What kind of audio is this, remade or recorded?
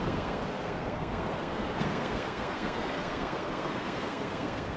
remade